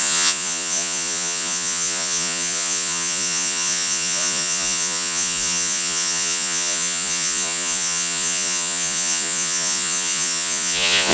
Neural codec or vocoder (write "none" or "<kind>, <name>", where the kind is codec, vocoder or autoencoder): vocoder, Vocos